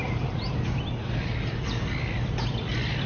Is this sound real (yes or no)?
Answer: no